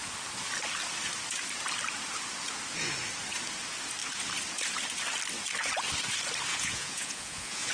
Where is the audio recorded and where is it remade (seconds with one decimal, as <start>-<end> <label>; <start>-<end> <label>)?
0.0-6.5 recorded; 6.5-7.7 remade